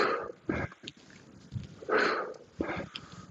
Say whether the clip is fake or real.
real